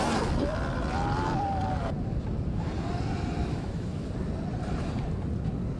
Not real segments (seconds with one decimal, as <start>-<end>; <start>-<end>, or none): 3.5-4.1